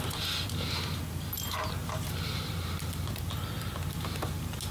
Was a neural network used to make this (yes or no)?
no